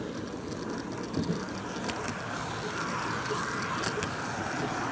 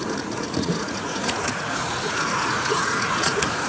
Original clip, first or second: first